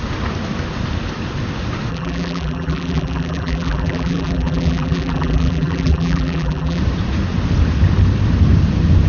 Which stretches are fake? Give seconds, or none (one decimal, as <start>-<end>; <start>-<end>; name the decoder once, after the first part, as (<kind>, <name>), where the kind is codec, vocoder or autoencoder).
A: 1.9-6.8 (vocoder, BigVGAN v2)